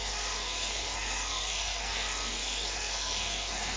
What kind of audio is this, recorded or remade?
remade